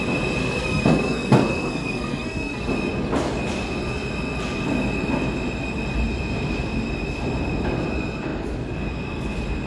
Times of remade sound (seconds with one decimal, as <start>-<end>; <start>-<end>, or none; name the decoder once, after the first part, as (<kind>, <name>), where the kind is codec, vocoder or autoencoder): 0.4-2.7 (codec, SNAC)